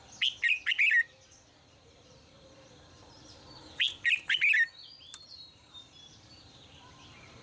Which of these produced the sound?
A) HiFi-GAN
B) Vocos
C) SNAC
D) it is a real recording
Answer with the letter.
D